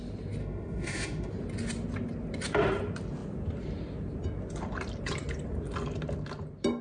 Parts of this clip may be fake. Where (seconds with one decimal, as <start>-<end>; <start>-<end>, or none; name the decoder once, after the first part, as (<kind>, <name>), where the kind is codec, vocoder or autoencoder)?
0.4-1.3 (autoencoder, DAC-VAE)